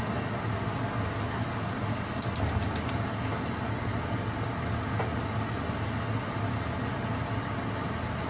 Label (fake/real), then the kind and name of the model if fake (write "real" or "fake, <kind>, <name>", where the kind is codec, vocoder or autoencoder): real